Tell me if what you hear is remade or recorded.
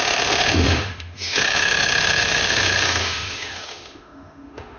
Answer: remade